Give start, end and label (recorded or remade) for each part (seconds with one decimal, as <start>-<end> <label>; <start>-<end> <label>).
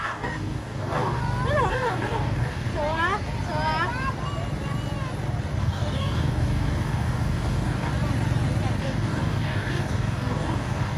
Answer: 0.0-1.2 remade; 1.2-1.7 recorded; 1.7-2.7 remade; 2.7-5.6 recorded; 5.6-7.9 remade; 7.9-8.8 recorded; 8.8-11.0 remade